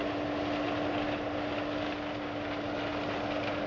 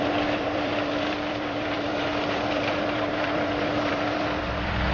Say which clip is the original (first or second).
first